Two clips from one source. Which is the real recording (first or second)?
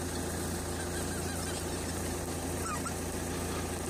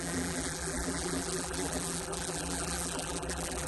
first